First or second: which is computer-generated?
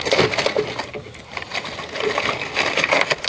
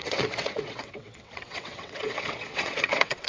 second